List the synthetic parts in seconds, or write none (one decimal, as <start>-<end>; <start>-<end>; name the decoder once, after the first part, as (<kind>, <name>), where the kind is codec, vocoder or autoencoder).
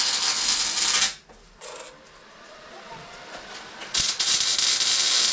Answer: 2.2-4.4 (vocoder, Vocos)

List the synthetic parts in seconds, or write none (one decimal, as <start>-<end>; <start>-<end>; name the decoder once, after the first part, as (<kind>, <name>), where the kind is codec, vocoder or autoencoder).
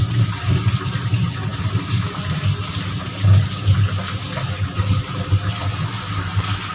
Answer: none